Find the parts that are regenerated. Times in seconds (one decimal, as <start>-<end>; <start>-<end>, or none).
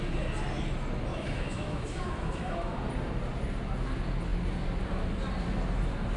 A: 1.1-2.8